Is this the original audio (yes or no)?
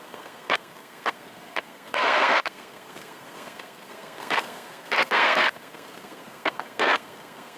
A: no